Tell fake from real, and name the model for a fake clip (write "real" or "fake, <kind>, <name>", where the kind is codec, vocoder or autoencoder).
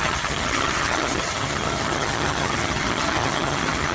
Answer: fake, vocoder, HiFi-GAN